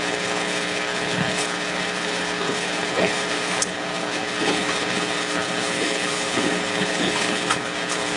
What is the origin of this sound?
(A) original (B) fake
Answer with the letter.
B